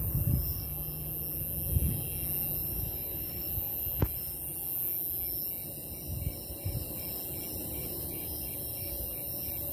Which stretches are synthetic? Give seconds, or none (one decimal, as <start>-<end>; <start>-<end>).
2.6-3.3; 7.6-8.3